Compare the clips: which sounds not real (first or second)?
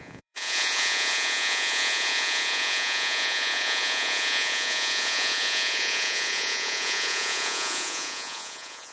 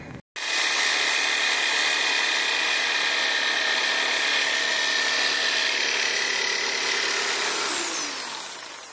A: first